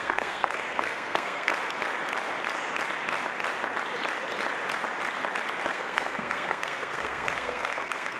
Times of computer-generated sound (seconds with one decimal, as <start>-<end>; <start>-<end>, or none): 0.0-1.5; 5.7-8.2